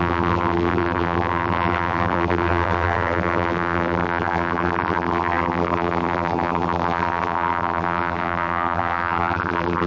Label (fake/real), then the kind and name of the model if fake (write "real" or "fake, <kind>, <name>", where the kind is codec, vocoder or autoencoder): fake, vocoder, BigVGAN v2